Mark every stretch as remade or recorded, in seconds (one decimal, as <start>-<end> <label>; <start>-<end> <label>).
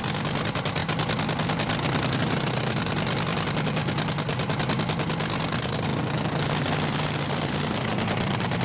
0.0-0.8 remade; 0.8-2.2 recorded; 2.2-3.8 remade; 3.8-5.4 recorded; 5.4-5.9 remade; 5.9-7.3 recorded; 7.3-8.6 remade